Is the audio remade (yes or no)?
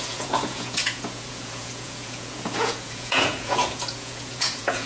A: yes